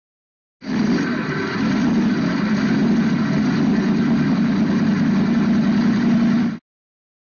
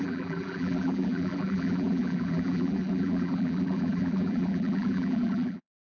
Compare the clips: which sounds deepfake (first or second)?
second